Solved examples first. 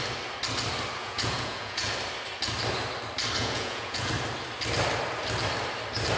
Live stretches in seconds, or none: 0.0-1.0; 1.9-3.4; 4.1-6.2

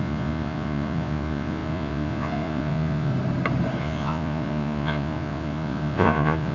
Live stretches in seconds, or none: 3.1-3.8

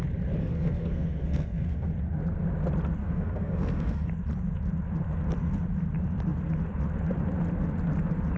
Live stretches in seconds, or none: 0.0-0.4; 1.9-3.0; 4.0-8.4